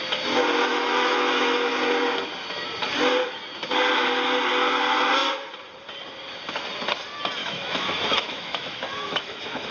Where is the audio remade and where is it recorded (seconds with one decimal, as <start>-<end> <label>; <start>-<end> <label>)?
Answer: 0.0-0.7 recorded; 0.7-1.7 remade; 1.7-7.4 recorded; 7.4-9.7 remade